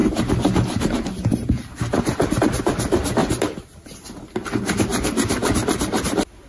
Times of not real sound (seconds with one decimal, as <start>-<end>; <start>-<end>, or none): 0.0-2.4; 3.2-4.3; 4.9-6.0